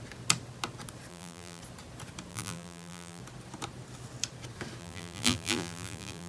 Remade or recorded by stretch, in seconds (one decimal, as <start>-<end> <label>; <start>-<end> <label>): 0.0-1.1 recorded; 1.1-1.6 remade; 1.6-2.3 recorded; 2.3-3.2 remade; 3.2-4.8 recorded; 4.8-6.3 remade